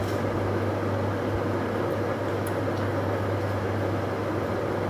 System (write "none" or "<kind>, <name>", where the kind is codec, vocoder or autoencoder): none